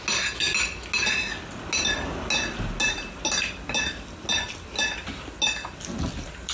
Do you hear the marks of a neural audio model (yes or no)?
no